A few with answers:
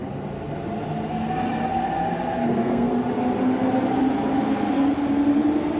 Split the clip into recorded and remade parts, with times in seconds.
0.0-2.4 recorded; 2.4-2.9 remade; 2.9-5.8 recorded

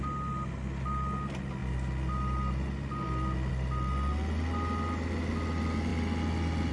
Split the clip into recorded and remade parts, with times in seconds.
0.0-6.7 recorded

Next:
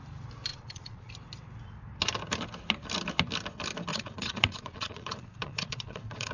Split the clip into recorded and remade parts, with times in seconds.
0.0-0.5 recorded; 0.5-1.1 remade; 1.1-3.9 recorded; 3.9-6.3 remade